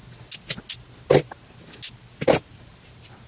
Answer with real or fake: real